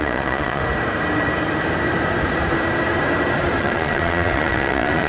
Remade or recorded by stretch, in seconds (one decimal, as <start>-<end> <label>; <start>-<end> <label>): 0.0-0.6 remade; 0.6-3.6 recorded; 3.6-5.1 remade